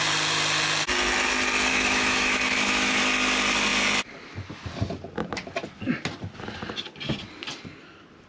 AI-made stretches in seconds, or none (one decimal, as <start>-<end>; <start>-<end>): 1.7-3.0